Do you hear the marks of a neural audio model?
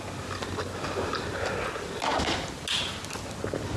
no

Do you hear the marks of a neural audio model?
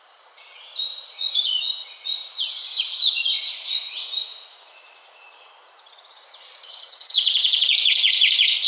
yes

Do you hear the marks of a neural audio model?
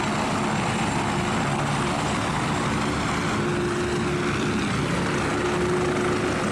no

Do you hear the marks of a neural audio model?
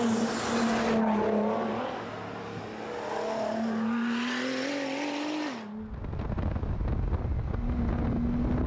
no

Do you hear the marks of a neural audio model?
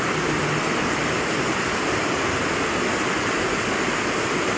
no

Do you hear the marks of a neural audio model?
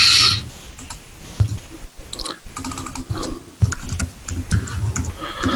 no